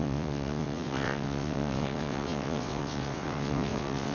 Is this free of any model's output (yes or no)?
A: no